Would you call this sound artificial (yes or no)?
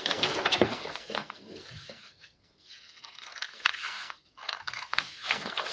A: yes